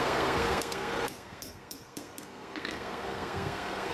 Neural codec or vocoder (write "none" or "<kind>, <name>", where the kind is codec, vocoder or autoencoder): codec, SNAC